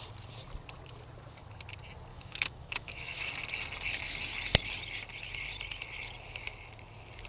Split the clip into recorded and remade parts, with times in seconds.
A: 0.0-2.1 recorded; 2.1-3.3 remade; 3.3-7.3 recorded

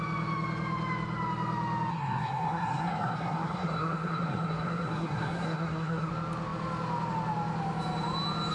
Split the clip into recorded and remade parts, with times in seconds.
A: 0.0-1.9 recorded; 1.9-6.1 remade; 6.1-8.5 recorded

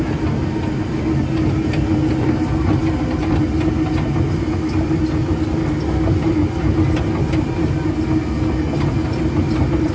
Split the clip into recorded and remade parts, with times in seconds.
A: 0.0-9.9 recorded

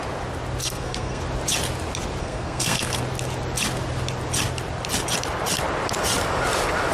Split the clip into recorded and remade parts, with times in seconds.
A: 0.0-0.6 recorded; 0.6-1.2 remade; 1.2-2.2 recorded; 2.2-3.0 remade; 3.0-6.9 recorded

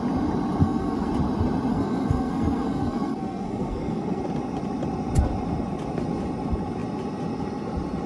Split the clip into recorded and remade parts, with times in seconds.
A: 0.0-0.6 recorded; 0.6-1.1 remade; 1.1-1.7 recorded; 1.7-4.2 remade; 4.2-8.1 recorded